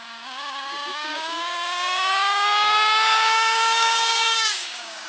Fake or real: fake